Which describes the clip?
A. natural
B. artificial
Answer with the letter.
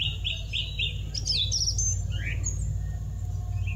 A